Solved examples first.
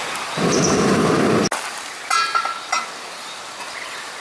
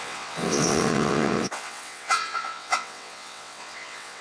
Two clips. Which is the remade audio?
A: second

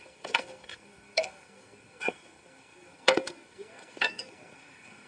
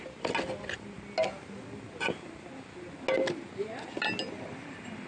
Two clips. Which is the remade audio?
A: first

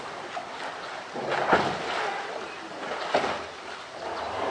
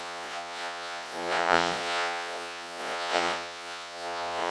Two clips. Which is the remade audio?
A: second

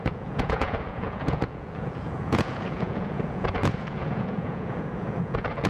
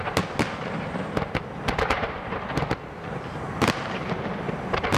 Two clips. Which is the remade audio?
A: first